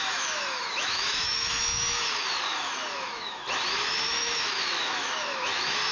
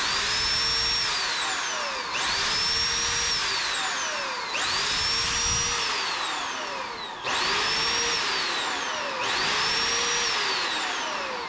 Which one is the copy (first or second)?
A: first